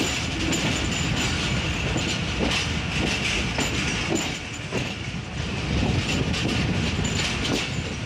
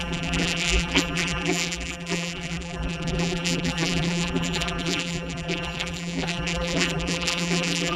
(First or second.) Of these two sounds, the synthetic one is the second